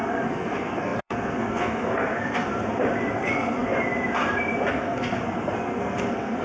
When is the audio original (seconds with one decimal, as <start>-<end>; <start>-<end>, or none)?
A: 2.5-3.1; 3.7-4.7